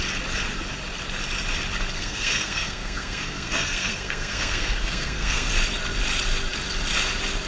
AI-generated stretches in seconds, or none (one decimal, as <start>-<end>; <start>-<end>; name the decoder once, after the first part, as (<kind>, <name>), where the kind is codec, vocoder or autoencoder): 2.0-5.5 (codec, SNAC)